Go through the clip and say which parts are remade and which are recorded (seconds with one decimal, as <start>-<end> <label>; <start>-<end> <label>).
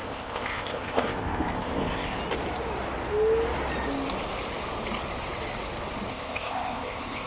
0.0-2.2 remade; 2.2-6.1 recorded; 6.1-7.3 remade